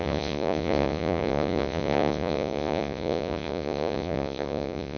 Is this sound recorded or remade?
remade